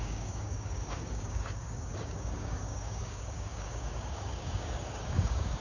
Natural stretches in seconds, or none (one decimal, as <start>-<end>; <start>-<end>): none